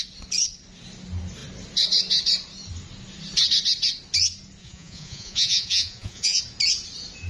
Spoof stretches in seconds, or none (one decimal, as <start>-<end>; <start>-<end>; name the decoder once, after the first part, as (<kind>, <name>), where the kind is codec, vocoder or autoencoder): 4.6-6.4 (vocoder, Vocos)